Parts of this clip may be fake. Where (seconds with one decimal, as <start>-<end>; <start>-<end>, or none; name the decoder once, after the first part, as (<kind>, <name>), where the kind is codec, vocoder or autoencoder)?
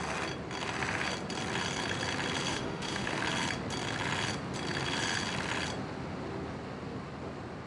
2.5-3.2 (autoencoder, DAC-VAE)